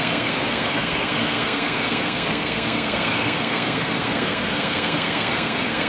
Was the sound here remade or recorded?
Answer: remade